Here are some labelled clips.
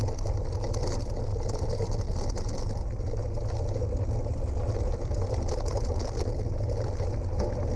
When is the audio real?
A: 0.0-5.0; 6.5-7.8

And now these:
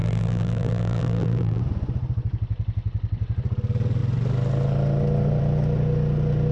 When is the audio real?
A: 1.6-6.5

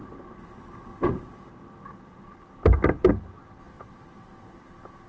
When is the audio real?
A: 3.1-5.1

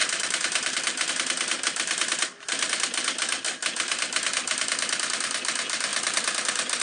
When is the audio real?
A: 1.1-5.9

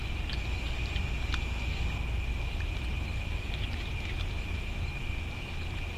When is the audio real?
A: 0.0-2.3; 4.7-6.0

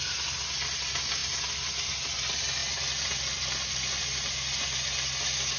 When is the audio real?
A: 0.0-5.6

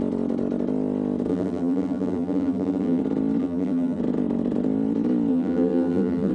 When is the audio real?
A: 0.0-1.3; 3.0-3.4; 4.0-5.3